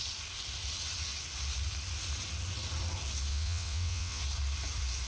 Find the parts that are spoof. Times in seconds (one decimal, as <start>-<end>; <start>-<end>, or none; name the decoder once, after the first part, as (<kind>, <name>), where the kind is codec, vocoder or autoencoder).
3.3-4.2 (vocoder, WaveNeXt)